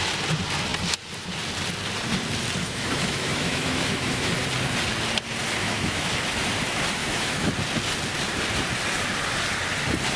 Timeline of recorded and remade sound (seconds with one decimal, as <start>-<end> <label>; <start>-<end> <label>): 0.0-2.6 recorded; 2.6-4.3 remade; 4.3-5.6 recorded; 5.6-6.1 remade; 6.1-7.0 recorded; 7.0-7.5 remade; 7.5-10.2 recorded